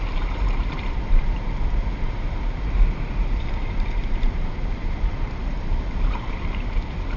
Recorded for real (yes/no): no